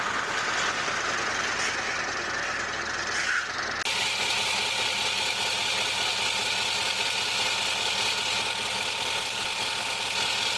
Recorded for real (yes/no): yes